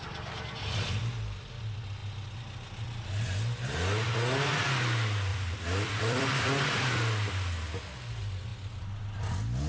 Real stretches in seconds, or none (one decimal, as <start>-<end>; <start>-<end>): 1.0-5.3; 6.3-9.7